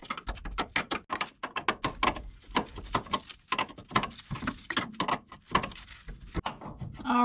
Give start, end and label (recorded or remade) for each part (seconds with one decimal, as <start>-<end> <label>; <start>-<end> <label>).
0.0-7.2 recorded